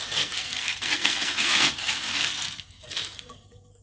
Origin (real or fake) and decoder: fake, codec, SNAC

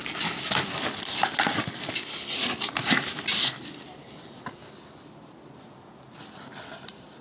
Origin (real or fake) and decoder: real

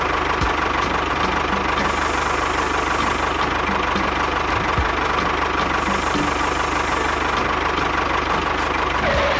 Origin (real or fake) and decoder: real